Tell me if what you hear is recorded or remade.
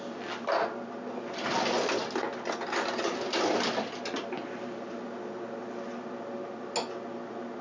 recorded